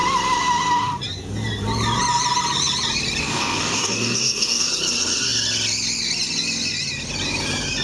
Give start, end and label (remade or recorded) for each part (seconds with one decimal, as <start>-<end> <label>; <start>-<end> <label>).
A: 0.0-3.2 recorded; 3.2-4.7 remade; 4.7-7.8 recorded